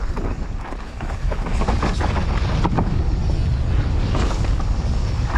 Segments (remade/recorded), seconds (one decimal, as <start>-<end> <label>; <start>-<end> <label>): 0.0-2.2 remade; 2.2-2.7 recorded; 2.7-3.2 remade; 3.2-3.9 recorded; 3.9-5.4 remade